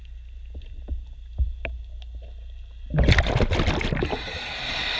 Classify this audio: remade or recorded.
recorded